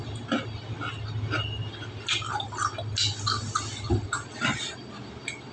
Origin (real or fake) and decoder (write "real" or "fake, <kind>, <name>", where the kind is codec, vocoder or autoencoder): real